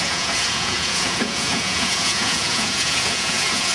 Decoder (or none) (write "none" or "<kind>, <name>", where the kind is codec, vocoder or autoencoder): vocoder, Vocos